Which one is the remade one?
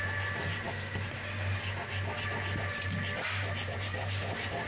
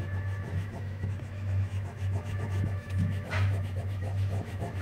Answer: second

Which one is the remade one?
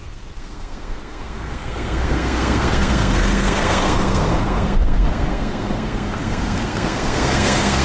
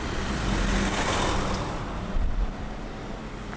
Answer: first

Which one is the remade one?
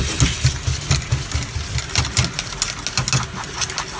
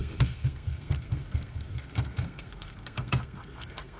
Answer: second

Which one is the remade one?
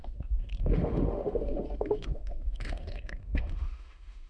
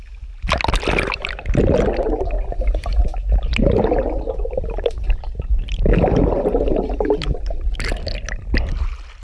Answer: first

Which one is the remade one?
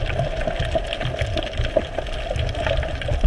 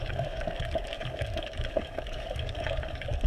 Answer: second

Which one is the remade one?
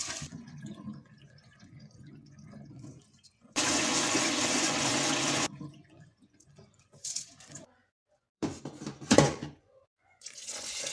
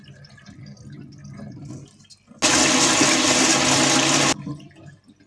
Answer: first